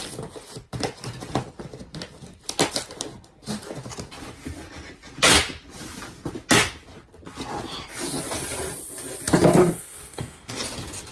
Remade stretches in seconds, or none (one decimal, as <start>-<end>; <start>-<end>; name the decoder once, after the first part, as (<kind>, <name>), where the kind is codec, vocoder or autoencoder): 9.6-10.6 (codec, SNAC)

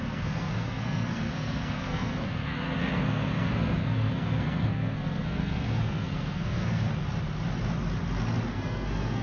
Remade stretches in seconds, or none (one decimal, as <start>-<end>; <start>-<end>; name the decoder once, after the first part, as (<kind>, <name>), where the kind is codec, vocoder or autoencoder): 0.0-6.9 (codec, SNAC); 8.5-9.2

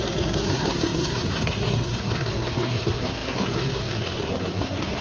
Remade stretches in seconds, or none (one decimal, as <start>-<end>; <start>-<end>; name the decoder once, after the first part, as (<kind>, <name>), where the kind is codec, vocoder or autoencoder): 0.0-5.0 (codec, SNAC)

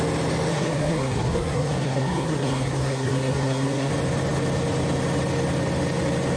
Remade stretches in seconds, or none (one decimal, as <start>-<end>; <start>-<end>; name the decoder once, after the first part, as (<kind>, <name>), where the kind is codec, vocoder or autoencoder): 0.5-3.9 (codec, SNAC)

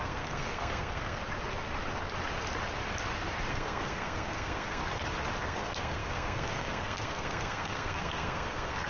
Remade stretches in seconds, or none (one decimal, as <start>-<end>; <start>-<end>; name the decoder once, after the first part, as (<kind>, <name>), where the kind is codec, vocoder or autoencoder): 0.0-1.2 (codec, SNAC); 3.5-4.8; 5.4-8.9